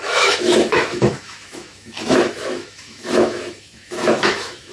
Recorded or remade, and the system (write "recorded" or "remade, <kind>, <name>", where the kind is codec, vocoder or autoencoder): remade, autoencoder, DAC-VAE